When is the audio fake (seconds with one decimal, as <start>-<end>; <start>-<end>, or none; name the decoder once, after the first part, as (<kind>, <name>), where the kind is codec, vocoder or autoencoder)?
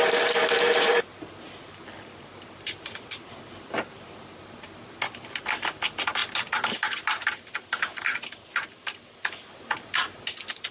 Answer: none